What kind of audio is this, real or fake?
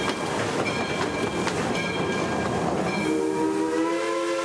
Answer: real